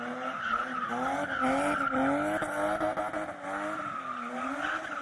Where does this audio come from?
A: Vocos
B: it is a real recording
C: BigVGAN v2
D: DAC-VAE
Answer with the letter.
B